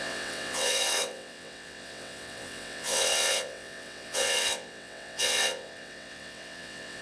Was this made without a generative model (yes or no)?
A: no